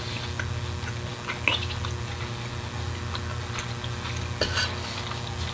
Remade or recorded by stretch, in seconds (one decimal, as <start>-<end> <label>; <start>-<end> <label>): 0.0-5.5 recorded